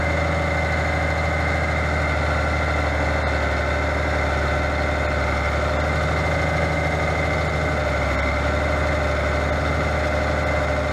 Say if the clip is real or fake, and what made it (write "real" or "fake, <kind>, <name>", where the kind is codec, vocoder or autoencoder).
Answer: real